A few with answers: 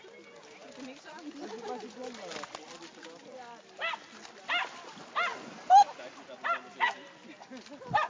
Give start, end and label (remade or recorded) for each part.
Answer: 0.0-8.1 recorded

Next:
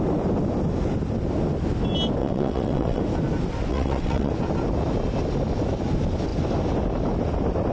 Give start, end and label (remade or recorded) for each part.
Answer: 0.0-2.2 recorded; 2.2-3.0 remade; 3.0-3.7 recorded; 3.7-4.3 remade; 4.3-7.7 recorded

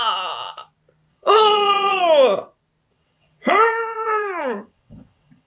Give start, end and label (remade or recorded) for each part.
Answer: 0.0-1.1 recorded; 1.1-2.0 remade; 2.0-2.9 recorded; 2.9-5.5 remade